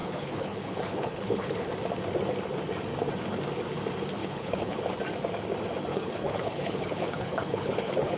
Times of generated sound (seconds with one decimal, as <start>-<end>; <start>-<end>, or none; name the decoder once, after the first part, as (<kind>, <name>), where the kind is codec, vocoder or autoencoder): 0.0-1.7 (codec, HILCodec); 4.2-4.8; 5.9-8.2